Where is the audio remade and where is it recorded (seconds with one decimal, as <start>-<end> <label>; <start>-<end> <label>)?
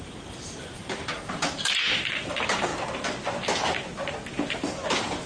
0.0-2.7 remade; 2.7-4.3 recorded; 4.3-5.3 remade